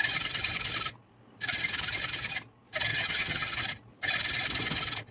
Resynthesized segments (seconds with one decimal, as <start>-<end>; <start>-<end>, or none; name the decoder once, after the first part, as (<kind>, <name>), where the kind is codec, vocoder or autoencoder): 2.9-3.5 (vocoder, HiFi-GAN)